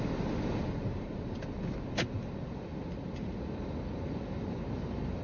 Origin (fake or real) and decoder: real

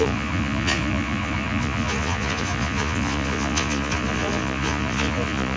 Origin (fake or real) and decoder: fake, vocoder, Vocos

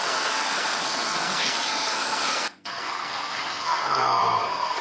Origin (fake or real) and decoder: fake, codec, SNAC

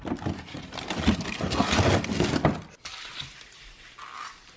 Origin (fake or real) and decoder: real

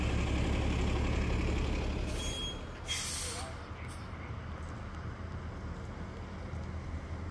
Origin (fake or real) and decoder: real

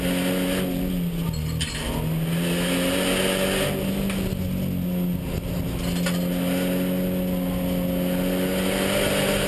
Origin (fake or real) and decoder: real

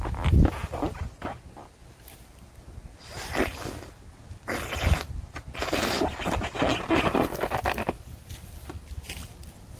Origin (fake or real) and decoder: real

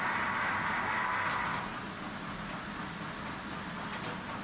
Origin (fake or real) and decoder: real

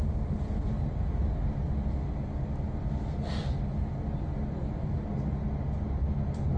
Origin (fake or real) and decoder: real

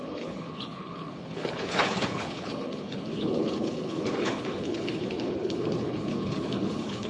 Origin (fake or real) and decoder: fake, codec, HILCodec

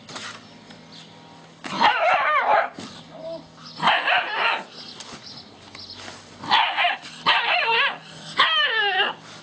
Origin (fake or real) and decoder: real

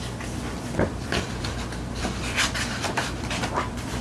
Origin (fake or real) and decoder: fake, vocoder, BigVGAN v2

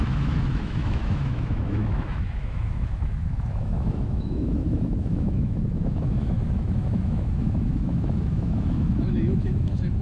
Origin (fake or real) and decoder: fake, autoencoder, DAC-VAE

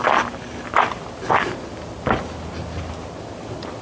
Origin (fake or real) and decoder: real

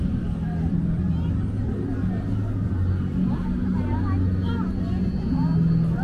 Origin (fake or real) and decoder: real